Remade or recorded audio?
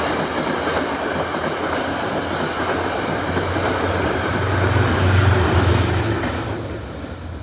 recorded